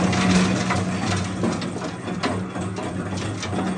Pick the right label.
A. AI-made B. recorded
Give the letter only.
B